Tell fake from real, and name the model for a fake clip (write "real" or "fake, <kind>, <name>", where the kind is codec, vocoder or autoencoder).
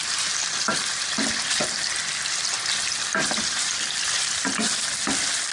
real